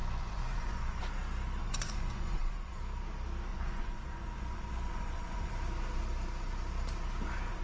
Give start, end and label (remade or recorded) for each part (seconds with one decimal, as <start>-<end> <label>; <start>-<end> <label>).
0.0-1.0 remade; 1.0-1.6 recorded; 1.6-2.8 remade; 2.8-3.5 recorded; 3.5-5.5 remade; 5.5-7.6 recorded